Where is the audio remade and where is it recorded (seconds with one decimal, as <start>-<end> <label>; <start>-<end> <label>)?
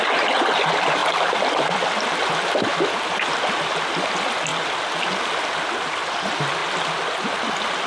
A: 0.0-7.9 recorded